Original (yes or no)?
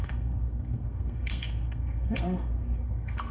no